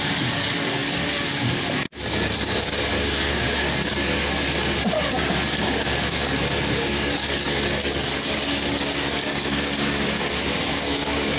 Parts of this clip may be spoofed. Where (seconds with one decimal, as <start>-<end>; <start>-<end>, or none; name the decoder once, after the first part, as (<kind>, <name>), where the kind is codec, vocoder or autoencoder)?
0.0-11.4 (codec, DAC)

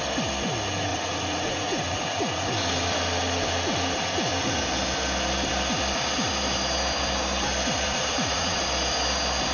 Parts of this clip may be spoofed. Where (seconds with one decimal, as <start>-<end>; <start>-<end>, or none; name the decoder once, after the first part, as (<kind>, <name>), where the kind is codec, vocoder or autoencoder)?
0.9-2.5 (vocoder, Vocos); 8.1-8.6

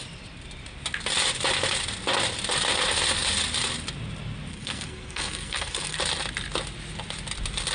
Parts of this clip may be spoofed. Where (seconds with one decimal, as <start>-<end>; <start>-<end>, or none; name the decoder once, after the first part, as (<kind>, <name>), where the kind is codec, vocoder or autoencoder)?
4.5-6.0 (codec, SNAC)

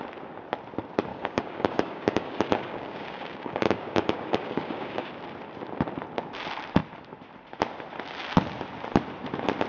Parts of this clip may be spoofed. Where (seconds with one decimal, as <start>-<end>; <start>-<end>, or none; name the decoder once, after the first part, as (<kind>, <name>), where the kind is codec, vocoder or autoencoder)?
1.1-5.1 (codec, DAC)

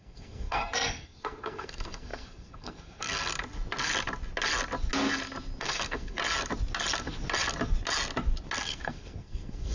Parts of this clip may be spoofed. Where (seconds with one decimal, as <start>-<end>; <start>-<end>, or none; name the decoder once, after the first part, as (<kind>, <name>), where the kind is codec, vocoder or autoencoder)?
0.0-3.3 (codec, SNAC); 5.6-6.2; 8.6-9.7

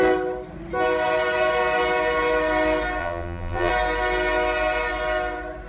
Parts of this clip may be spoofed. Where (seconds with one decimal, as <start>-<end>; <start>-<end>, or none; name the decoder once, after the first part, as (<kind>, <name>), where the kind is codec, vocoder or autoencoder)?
3.0-3.7 (vocoder, BigVGAN v2)